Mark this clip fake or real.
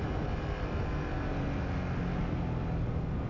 real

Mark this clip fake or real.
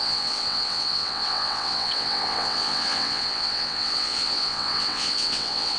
fake